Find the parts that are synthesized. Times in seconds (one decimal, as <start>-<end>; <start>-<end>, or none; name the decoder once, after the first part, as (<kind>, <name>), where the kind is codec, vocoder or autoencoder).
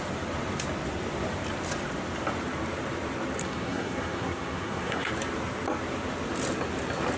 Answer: 3.4-5.1 (codec, SNAC)